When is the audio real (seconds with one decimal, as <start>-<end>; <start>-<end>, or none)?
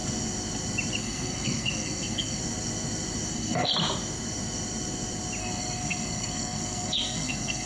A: 0.0-1.0; 2.4-3.3; 3.7-5.4